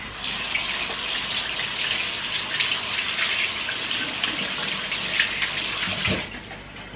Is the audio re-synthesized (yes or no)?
no